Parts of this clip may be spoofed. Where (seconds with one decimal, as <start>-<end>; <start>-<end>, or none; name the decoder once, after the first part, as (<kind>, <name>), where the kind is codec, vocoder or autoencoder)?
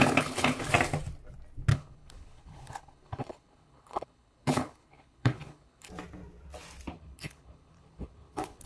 0.0-0.6 (codec, HILCodec); 1.7-5.9; 6.9-8.7